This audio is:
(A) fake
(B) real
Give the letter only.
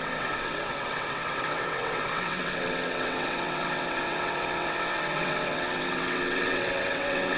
A